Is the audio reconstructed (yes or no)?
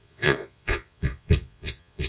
yes